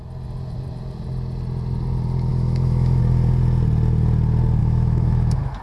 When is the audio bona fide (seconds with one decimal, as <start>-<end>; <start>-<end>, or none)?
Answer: 0.0-2.3; 3.0-4.6